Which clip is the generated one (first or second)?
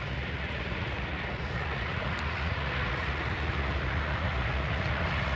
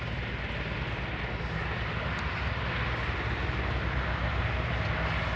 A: first